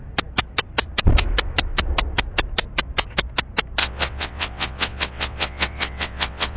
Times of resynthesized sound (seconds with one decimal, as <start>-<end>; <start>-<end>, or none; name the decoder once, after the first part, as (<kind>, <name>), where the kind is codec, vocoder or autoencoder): 3.8-6.6 (vocoder, WaveNeXt)